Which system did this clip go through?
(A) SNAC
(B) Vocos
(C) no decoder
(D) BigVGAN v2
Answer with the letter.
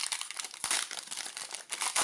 D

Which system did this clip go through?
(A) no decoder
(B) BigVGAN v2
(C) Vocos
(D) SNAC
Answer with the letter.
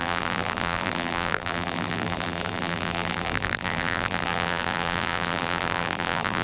B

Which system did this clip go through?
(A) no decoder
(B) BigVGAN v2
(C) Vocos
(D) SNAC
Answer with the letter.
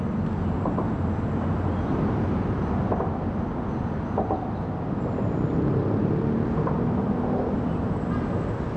A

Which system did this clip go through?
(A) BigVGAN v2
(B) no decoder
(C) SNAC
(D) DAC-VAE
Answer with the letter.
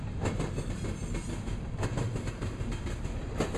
B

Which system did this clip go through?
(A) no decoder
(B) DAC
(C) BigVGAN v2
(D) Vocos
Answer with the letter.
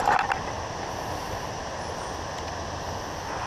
A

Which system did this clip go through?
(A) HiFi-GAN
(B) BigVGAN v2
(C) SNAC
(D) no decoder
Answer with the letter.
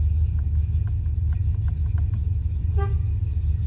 D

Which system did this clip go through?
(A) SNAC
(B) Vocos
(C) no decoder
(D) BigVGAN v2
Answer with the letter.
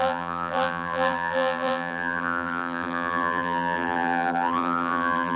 D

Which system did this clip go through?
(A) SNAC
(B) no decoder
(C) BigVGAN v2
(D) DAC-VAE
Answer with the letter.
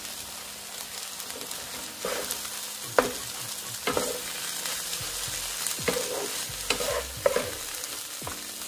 B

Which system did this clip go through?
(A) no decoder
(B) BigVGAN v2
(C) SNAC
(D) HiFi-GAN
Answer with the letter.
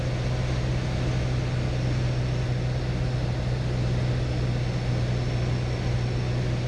A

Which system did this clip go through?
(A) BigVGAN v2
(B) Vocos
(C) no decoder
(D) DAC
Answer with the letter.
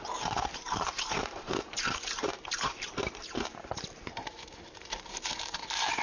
A